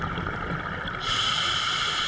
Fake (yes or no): no